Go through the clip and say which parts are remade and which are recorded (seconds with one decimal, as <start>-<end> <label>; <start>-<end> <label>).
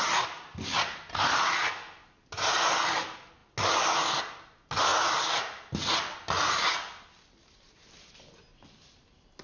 0.0-9.4 recorded